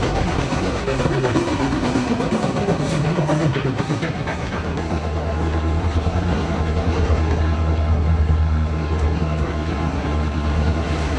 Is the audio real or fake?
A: fake